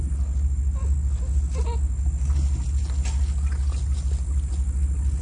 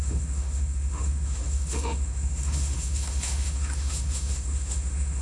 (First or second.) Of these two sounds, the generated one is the second